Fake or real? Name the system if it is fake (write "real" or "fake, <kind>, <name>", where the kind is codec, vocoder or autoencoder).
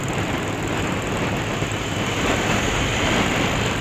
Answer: real